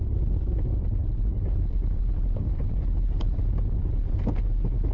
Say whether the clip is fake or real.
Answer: real